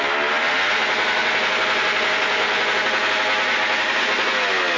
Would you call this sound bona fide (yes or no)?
yes